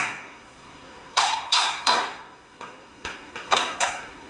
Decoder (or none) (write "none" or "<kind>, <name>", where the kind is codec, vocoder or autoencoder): codec, SNAC